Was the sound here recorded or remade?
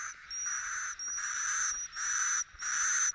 recorded